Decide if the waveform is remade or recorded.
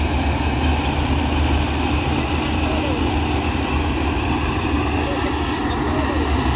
recorded